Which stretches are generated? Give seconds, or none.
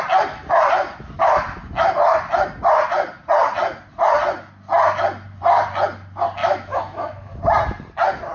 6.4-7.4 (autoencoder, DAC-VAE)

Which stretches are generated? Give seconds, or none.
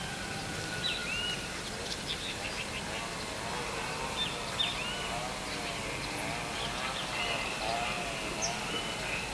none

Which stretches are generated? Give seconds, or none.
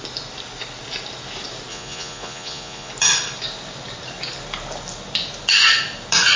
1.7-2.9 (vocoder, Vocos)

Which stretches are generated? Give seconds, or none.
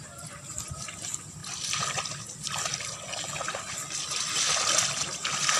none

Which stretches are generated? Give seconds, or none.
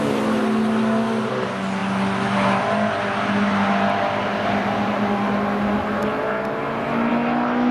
none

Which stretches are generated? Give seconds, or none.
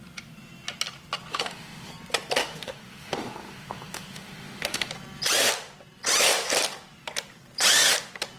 1.3-1.9 (autoencoder, DAC-VAE); 2.4-4.9